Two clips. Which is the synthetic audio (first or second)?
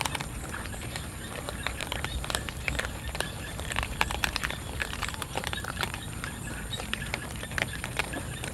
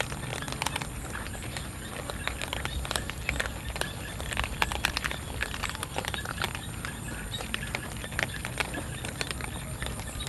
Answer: first